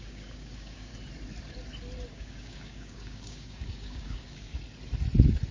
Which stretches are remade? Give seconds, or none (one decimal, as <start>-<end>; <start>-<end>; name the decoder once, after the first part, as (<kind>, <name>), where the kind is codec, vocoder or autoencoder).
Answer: 0.0-0.9 (codec, DAC); 2.1-4.5